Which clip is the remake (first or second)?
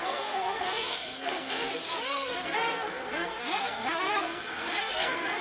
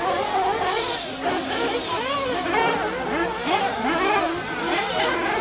first